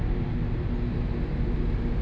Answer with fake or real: real